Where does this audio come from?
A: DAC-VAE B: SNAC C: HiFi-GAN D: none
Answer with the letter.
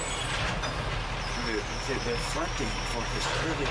D